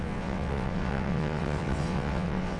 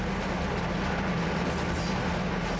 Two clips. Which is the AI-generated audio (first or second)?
first